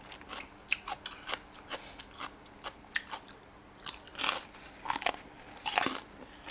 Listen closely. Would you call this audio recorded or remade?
recorded